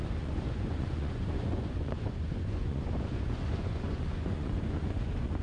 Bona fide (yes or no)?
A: no